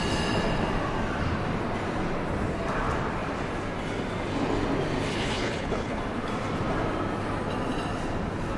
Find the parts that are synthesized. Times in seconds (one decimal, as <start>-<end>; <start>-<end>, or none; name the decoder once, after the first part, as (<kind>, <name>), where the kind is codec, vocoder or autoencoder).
5.1-6.0 (codec, HILCodec)